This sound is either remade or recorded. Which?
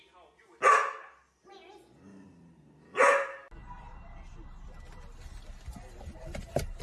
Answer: recorded